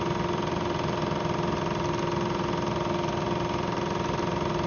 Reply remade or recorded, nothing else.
recorded